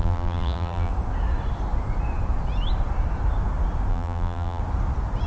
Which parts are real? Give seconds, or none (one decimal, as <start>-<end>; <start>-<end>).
0.9-3.9; 4.6-5.3